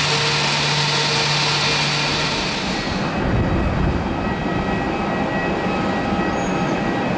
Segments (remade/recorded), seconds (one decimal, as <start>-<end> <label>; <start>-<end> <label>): 0.0-7.2 recorded

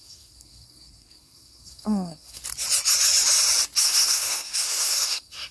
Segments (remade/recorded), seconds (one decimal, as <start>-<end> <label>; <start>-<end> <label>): 0.0-2.4 remade; 2.4-3.8 recorded; 3.8-5.5 remade

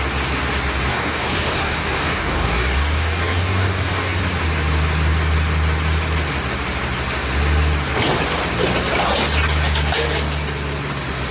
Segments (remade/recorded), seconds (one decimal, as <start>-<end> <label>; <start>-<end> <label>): 0.0-0.9 recorded; 0.9-4.2 remade; 4.2-11.3 recorded

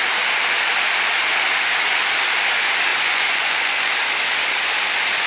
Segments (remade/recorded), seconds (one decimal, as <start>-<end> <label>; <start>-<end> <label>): 0.0-2.9 recorded; 2.9-3.9 remade; 3.9-5.3 recorded

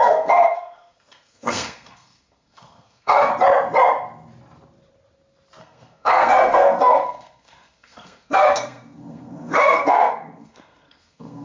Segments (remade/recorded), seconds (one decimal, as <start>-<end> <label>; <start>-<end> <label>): 0.0-3.3 remade; 3.3-5.6 recorded; 5.6-11.4 remade

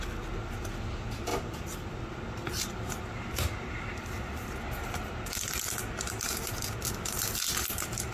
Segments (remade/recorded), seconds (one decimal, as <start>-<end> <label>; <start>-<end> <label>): 0.0-8.1 recorded

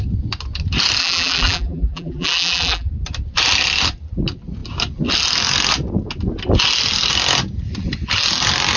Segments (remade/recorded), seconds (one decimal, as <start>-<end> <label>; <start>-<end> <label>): 0.0-1.0 recorded; 1.0-2.9 remade; 2.9-8.8 recorded

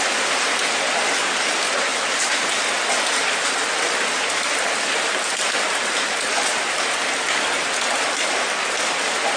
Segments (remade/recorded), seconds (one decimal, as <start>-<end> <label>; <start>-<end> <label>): 0.0-9.4 recorded